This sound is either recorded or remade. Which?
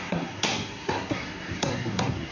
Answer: remade